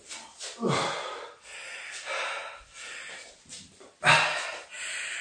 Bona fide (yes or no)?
yes